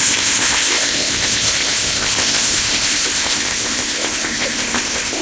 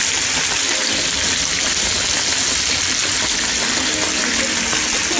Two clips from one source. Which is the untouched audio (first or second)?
second